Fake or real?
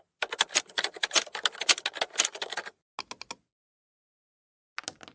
real